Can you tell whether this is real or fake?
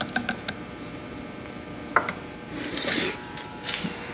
fake